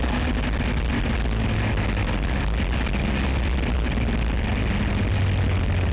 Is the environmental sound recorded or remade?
recorded